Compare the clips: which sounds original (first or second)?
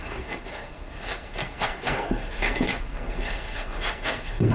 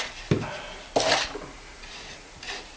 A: second